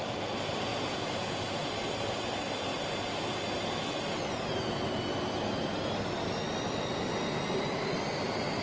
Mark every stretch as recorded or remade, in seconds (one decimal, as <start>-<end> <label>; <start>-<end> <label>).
0.0-0.7 recorded; 0.7-1.7 remade; 1.7-8.6 recorded